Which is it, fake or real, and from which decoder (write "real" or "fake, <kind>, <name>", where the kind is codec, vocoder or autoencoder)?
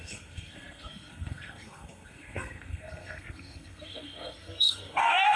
fake, codec, SNAC